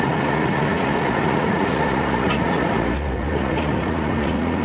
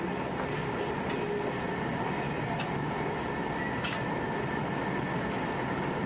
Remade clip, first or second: first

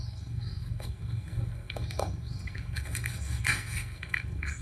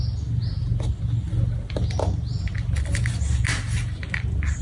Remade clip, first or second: first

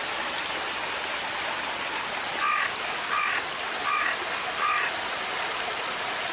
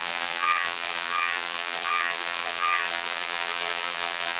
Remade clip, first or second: second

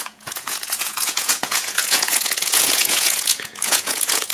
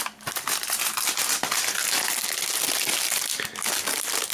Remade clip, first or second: first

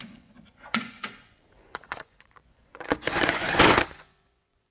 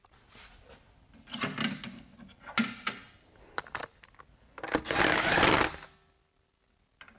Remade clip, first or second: first